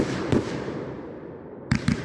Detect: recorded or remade remade